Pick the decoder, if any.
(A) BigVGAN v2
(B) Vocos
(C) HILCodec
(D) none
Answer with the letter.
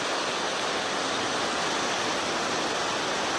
D